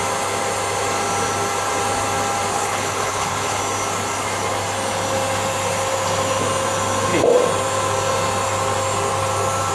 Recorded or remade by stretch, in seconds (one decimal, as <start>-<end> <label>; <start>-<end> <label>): 0.0-2.5 recorded; 2.5-3.6 remade; 3.6-9.7 recorded